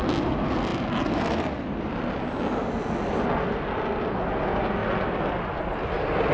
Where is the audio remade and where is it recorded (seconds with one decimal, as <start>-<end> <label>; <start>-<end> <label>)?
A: 0.0-6.3 recorded